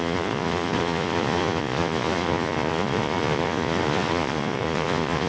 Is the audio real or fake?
fake